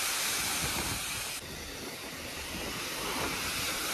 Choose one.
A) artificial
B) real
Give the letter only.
B